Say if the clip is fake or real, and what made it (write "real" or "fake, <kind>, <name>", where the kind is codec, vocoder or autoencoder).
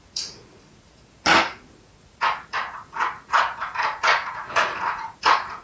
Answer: fake, vocoder, Vocos